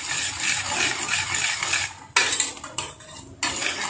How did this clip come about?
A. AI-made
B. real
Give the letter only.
B